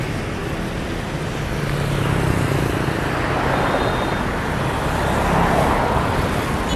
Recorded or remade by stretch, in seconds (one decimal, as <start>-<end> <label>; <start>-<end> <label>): 0.0-6.8 recorded